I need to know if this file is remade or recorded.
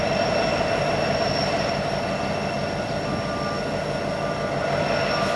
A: recorded